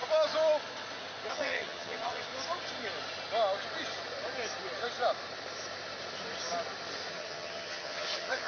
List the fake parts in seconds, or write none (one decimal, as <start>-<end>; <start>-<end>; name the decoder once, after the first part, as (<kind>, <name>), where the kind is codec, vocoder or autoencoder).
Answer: 1.3-2.3 (vocoder, HiFi-GAN); 7.1-8.5